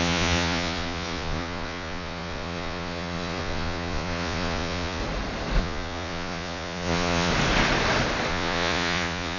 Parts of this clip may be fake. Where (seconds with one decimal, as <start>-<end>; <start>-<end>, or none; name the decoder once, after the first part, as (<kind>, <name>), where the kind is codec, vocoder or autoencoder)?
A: 0.0-5.0 (vocoder, Vocos); 5.6-7.3; 8.3-9.4